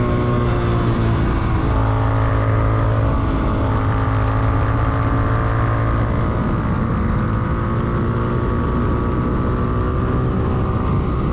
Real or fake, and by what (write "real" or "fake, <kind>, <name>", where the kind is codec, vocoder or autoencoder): real